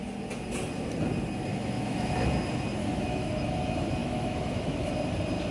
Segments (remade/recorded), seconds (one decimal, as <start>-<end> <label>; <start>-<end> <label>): 0.0-1.5 recorded; 1.5-2.1 remade; 2.1-2.8 recorded; 2.8-3.5 remade; 3.5-4.0 recorded; 4.0-4.9 remade; 4.9-5.5 recorded